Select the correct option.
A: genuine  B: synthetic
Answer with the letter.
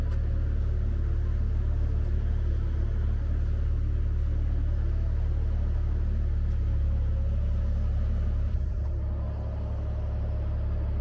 A